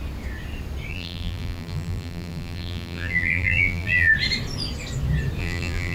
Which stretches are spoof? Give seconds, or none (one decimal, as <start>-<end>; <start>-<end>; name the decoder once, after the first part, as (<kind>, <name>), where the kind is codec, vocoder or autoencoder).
0.9-4.1 (vocoder, BigVGAN v2); 5.4-5.9